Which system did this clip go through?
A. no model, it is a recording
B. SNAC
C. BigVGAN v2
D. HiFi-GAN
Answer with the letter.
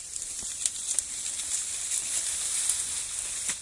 A